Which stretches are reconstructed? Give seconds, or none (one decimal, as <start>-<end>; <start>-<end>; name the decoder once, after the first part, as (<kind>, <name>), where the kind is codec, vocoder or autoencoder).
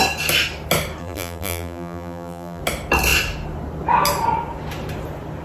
1.0-2.6 (vocoder, BigVGAN v2)